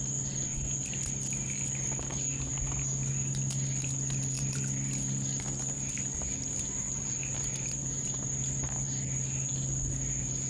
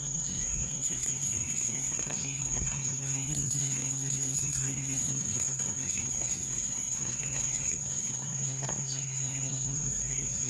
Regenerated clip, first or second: second